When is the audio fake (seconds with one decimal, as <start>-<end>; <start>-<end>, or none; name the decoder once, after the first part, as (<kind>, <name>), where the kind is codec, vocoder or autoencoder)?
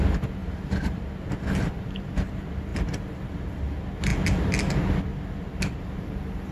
0.4-1.0 (vocoder, BigVGAN v2)